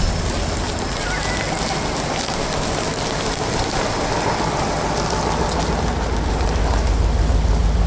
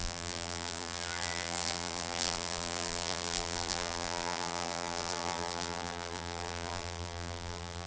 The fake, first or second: second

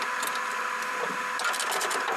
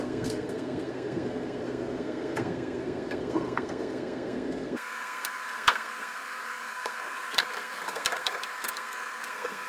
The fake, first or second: second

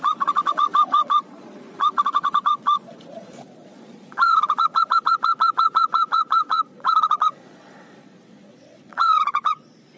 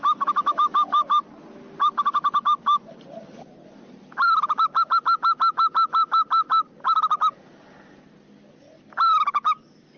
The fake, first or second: first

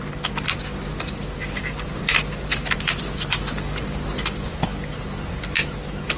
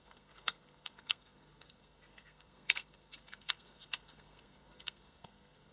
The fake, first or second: second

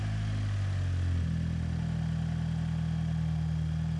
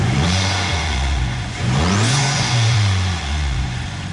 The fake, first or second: second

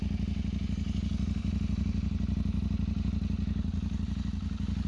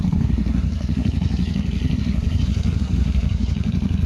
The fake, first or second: second